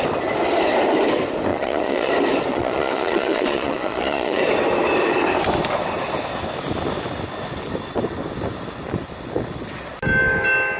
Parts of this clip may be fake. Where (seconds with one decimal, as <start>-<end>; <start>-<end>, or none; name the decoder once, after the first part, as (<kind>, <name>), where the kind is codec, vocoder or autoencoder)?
1.5-2.1 (vocoder, Vocos); 2.5-4.4

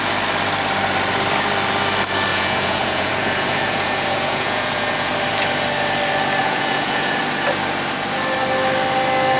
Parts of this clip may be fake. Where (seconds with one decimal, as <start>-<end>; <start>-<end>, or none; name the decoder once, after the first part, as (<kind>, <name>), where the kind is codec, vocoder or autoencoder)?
2.3-5.1 (vocoder, Vocos); 6.4-7.2